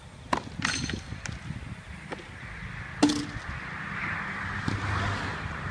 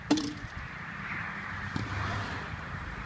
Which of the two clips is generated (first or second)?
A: second